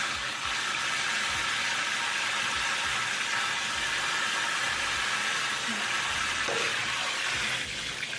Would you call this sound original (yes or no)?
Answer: yes